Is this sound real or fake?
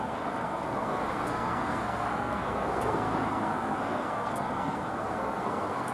fake